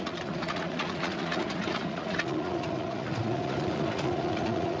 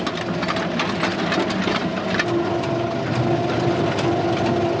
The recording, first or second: second